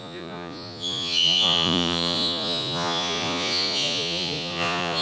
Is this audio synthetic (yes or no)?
yes